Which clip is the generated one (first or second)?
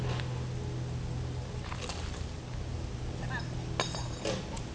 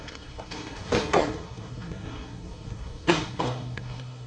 second